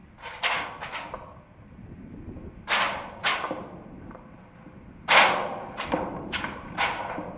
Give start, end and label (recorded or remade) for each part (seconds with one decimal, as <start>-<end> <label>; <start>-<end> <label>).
0.0-3.3 recorded; 3.3-4.4 remade; 4.4-6.1 recorded; 6.1-7.4 remade